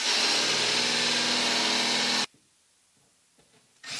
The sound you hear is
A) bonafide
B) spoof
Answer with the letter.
A